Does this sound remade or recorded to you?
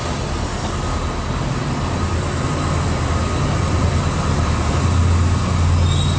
recorded